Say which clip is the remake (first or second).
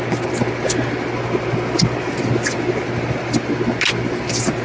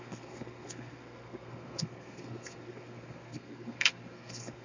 second